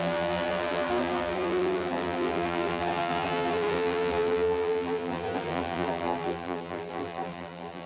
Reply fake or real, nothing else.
fake